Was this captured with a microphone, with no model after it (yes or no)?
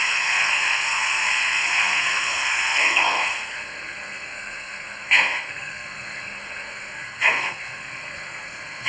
no